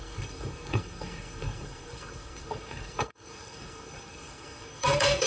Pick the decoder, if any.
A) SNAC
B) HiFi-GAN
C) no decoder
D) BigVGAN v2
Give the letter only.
A